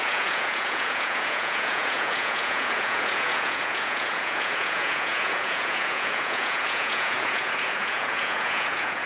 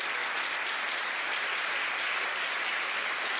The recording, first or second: second